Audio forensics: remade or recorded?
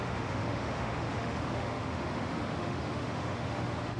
remade